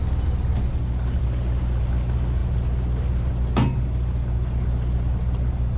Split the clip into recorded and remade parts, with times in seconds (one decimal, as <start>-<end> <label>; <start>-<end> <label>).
0.0-5.8 recorded